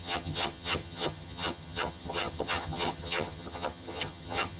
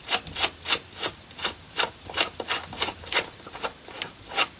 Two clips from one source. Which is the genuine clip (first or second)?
second